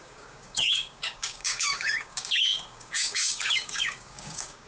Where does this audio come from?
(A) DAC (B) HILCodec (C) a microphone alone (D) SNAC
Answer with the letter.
A